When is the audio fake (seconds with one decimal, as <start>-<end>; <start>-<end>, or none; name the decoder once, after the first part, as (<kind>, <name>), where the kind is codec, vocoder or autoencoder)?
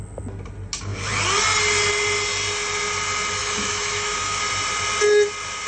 3.4-4.4 (autoencoder, DAC-VAE)